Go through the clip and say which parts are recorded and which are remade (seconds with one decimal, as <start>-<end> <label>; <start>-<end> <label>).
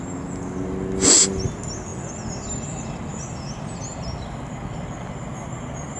0.0-6.0 recorded